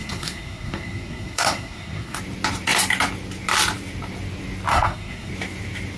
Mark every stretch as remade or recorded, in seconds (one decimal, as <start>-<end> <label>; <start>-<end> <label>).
0.0-2.2 remade; 2.2-4.7 recorded; 4.7-5.3 remade; 5.3-6.0 recorded